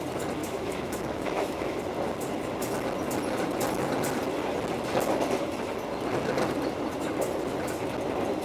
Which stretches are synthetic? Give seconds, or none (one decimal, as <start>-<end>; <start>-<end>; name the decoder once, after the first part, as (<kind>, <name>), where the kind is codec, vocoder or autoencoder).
0.4-1.8 (autoencoder, DAC-VAE)